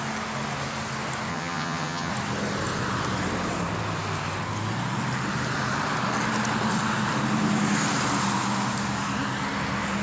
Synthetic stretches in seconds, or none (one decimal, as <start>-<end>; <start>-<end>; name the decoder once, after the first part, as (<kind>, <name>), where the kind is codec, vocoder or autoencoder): 1.3-2.1 (vocoder, HiFi-GAN)